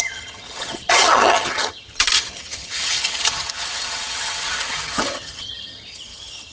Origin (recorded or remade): remade